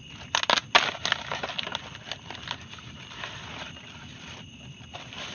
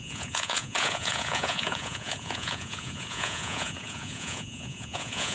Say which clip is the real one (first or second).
first